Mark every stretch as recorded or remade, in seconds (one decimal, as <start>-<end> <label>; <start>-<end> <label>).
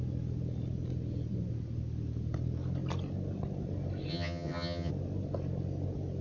0.0-4.1 recorded; 4.1-4.9 remade; 4.9-6.2 recorded